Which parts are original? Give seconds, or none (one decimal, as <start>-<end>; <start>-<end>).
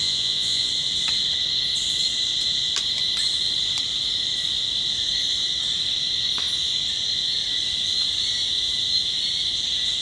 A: 0.7-10.0